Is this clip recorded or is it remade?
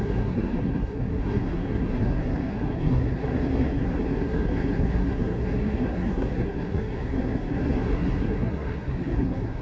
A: remade